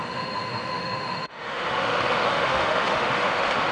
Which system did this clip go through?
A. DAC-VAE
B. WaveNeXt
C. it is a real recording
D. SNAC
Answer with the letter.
A